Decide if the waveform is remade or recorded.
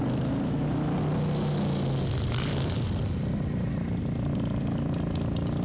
recorded